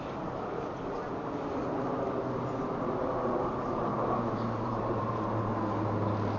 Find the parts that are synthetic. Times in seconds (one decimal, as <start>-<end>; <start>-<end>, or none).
3.9-5.4